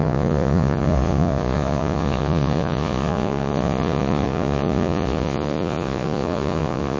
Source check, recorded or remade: remade